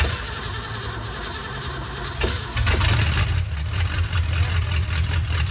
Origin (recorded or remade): recorded